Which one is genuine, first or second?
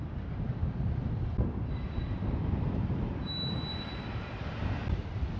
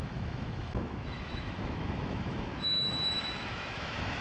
first